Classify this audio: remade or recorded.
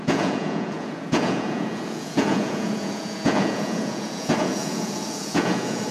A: remade